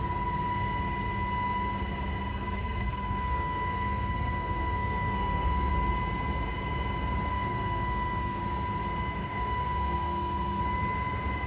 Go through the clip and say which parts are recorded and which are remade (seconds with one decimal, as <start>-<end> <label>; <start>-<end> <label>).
0.0-2.3 recorded; 2.3-5.7 remade; 5.7-7.3 recorded; 7.3-8.4 remade; 8.4-9.2 recorded; 9.2-10.6 remade; 10.6-11.5 recorded